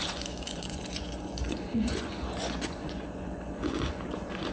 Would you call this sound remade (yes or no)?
yes